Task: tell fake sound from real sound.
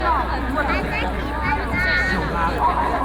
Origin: real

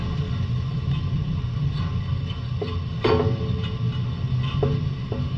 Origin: real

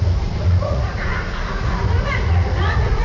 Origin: fake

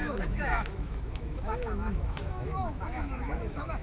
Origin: fake